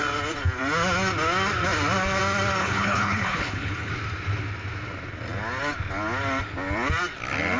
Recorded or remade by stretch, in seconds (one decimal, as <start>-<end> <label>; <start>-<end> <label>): 0.0-2.6 recorded; 2.6-3.9 remade; 3.9-7.6 recorded